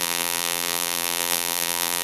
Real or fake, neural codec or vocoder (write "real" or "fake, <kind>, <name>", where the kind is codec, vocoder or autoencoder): fake, vocoder, BigVGAN v2